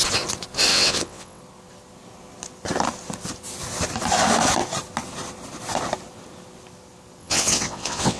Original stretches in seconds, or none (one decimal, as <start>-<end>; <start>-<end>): 0.0-0.7; 1.4-7.2

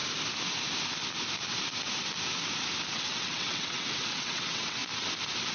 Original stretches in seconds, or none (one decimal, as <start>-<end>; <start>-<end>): 0.0-2.9; 4.8-5.5

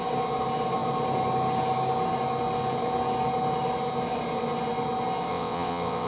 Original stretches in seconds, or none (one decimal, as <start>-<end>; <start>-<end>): 0.0-5.3

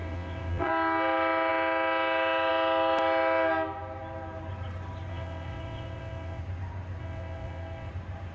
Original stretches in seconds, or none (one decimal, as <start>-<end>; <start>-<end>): 0.7-5.1; 6.4-7.0; 7.9-8.3

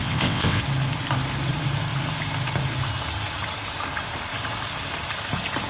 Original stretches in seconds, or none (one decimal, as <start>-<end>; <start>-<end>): 0.6-5.7

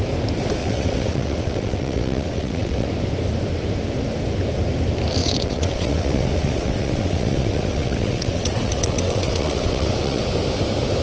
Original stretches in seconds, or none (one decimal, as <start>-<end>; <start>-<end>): 0.0-0.6; 2.9-5.2; 10.2-11.0